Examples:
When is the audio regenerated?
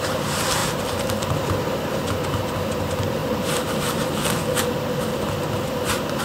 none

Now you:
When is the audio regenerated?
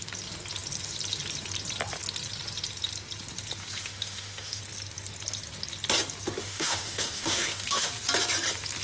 3.6-4.6 (autoencoder, DAC-VAE); 6.4-7.9